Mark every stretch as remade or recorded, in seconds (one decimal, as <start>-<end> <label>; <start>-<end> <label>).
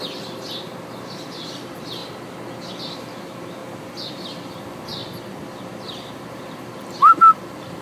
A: 0.0-2.0 remade; 2.0-2.8 recorded; 2.8-3.6 remade; 3.6-4.1 recorded; 4.1-5.0 remade; 5.0-5.8 recorded; 5.8-7.8 remade